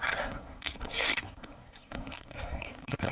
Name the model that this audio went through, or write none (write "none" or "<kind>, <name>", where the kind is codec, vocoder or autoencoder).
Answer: codec, SNAC